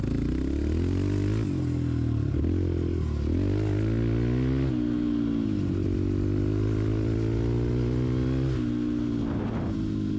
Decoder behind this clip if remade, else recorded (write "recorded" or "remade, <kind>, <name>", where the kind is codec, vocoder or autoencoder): recorded